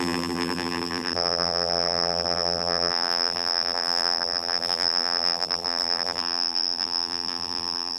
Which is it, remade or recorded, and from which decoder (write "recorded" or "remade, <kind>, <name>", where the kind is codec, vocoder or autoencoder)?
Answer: remade, vocoder, BigVGAN v2